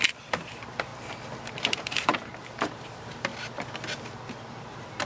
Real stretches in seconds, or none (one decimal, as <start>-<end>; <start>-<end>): 0.9-1.5; 3.3-4.6